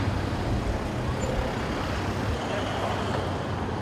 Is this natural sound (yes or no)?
yes